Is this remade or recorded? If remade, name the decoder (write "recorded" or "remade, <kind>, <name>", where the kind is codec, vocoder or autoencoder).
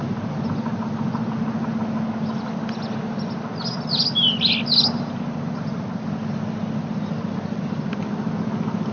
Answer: recorded